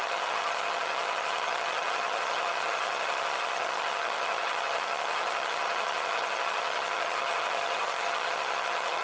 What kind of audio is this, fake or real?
fake